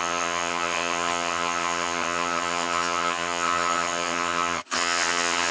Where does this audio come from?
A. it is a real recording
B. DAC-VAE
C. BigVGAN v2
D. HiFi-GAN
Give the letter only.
D